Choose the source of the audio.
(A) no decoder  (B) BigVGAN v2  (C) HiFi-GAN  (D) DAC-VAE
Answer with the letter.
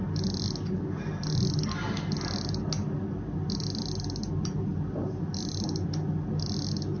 A